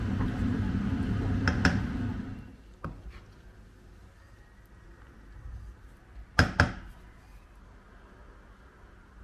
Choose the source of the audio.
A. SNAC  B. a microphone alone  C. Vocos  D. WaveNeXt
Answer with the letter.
B